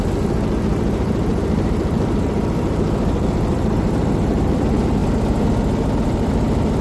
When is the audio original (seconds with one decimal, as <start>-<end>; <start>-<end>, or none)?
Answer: 5.0-6.0